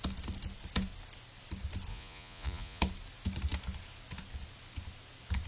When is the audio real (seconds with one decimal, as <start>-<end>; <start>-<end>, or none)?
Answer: 0.0-1.9; 2.8-5.5